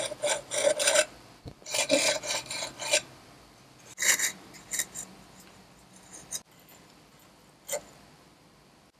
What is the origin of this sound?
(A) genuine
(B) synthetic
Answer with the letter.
A